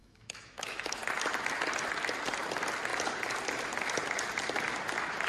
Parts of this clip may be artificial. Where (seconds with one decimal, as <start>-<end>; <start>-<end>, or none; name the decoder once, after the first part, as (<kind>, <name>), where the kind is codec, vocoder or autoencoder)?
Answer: 0.0-1.0 (autoencoder, DAC-VAE)